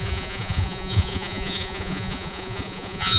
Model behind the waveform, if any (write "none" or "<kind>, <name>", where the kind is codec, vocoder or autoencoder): vocoder, Vocos